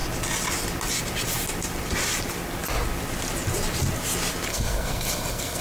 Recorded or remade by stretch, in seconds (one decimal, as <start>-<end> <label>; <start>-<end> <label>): 0.0-4.5 recorded; 4.5-5.6 remade